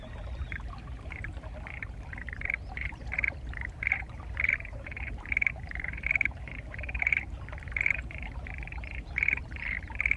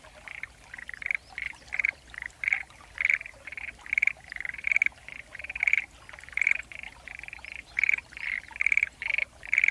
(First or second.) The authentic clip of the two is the second